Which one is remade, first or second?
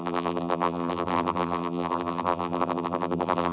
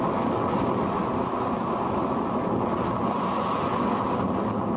first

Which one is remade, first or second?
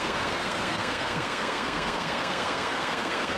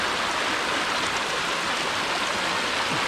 first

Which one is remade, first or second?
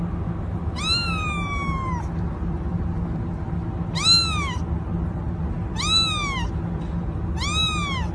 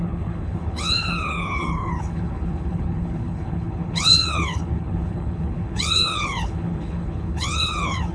second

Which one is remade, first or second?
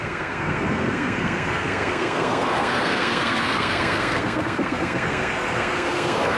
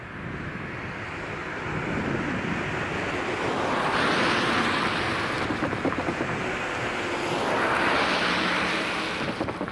first